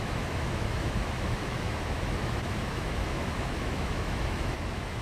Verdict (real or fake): fake